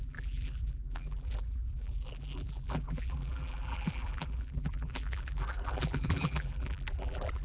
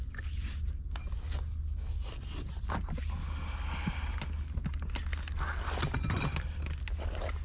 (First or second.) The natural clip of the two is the second